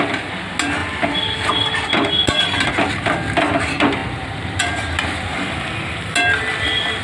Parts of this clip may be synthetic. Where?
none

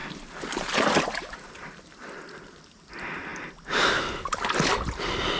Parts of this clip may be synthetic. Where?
none

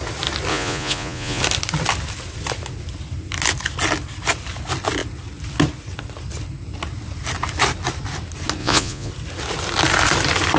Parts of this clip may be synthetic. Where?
0.5-1.4 (vocoder, Vocos); 8.6-9.1

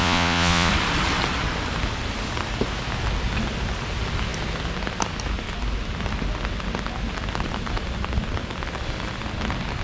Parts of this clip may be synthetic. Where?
0.0-0.7 (vocoder, Vocos)

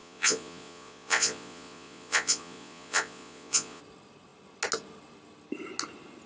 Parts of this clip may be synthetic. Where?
0.0-3.8 (vocoder, Vocos)

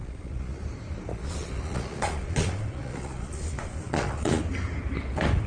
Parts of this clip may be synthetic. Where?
0.0-0.6 (vocoder, Vocos); 1.1-4.4